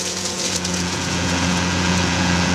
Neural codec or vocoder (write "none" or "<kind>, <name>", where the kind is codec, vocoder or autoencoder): vocoder, Vocos